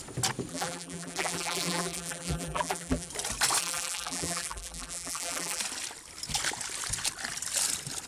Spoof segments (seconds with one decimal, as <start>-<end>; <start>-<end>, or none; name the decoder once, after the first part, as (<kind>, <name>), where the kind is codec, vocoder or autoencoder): 0.5-3.1 (vocoder, BigVGAN v2); 3.6-5.6